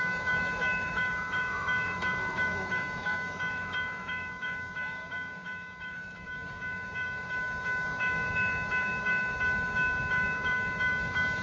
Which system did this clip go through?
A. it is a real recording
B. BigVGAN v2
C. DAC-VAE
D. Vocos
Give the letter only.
C